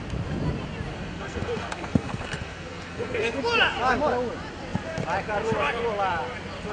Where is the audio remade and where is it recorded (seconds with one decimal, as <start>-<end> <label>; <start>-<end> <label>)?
0.0-0.9 recorded; 0.9-3.4 remade; 3.4-6.7 recorded